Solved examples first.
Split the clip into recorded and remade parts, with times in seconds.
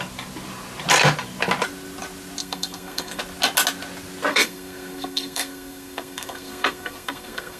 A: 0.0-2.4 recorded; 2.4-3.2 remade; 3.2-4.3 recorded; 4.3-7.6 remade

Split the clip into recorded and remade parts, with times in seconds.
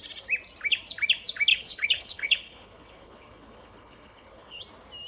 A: 0.0-1.5 recorded; 1.5-4.6 remade; 4.6-5.1 recorded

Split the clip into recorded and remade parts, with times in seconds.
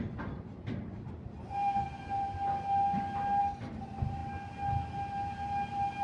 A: 0.0-6.0 recorded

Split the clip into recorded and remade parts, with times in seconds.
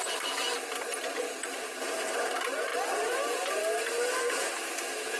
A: 0.0-5.2 recorded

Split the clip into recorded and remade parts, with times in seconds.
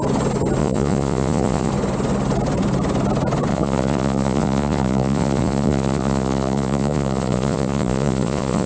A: 0.0-0.6 recorded; 0.6-1.7 remade; 1.7-3.5 recorded; 3.5-8.7 remade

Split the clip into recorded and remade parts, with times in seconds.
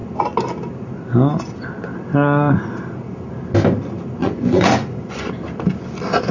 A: 0.0-4.2 recorded; 4.2-5.3 remade; 5.3-6.3 recorded